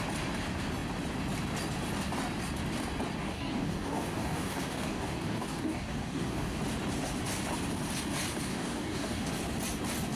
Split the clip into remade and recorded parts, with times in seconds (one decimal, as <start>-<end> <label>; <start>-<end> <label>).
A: 0.0-3.2 recorded; 3.2-6.6 remade; 6.6-8.5 recorded; 8.5-9.3 remade; 9.3-10.1 recorded